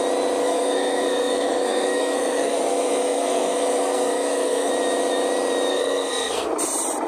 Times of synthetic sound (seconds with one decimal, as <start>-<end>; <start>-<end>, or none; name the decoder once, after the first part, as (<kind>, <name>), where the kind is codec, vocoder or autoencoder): 0.4-4.7 (codec, SNAC); 5.7-6.5